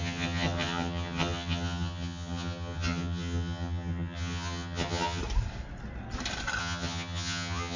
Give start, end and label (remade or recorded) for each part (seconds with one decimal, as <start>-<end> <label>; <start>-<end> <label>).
0.0-5.2 remade; 5.2-6.6 recorded; 6.6-7.8 remade